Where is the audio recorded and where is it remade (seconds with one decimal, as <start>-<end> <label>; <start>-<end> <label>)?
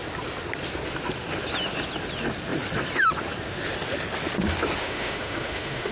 0.0-4.8 recorded; 4.8-5.9 remade